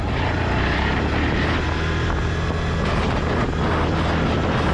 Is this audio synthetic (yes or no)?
no